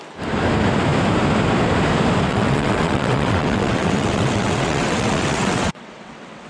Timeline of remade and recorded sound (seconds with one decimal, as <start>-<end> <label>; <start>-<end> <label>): 0.0-2.3 recorded; 2.3-6.5 remade